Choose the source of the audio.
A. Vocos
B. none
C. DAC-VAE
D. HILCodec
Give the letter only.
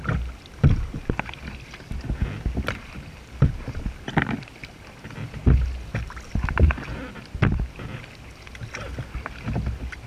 B